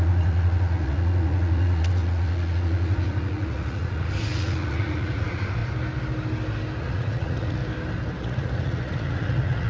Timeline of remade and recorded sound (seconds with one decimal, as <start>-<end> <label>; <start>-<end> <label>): 0.0-5.6 remade; 5.6-6.8 recorded; 6.8-7.6 remade; 7.6-8.2 recorded; 8.2-9.7 remade